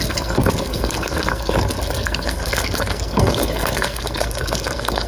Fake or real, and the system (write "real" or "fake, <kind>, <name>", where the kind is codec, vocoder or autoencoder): fake, codec, SNAC